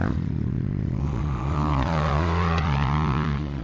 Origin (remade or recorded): remade